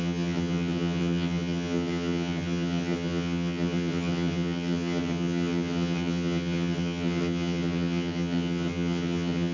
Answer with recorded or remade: remade